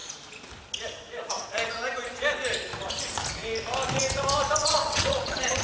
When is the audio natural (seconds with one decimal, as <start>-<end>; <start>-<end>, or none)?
0.0-4.6